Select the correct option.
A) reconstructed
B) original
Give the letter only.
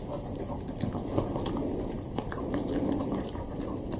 B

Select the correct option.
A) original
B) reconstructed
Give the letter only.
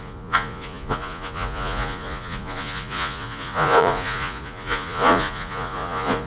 B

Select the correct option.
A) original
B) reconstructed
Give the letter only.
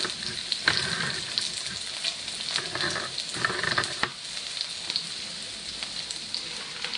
A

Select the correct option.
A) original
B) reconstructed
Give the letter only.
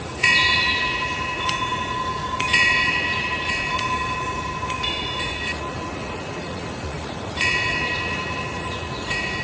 B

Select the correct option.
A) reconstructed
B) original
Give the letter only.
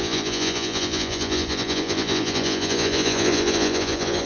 A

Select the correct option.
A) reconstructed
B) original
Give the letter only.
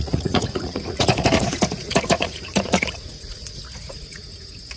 A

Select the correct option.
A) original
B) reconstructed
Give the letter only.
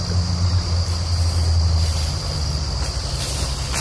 A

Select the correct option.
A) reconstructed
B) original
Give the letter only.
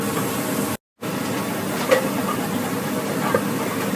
B